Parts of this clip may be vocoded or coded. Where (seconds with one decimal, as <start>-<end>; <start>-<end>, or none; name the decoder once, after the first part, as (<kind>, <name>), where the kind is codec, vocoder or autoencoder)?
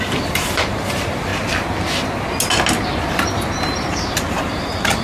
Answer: 0.0-1.3 (vocoder, BigVGAN v2); 4.3-5.0